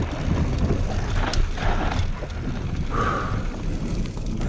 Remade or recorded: recorded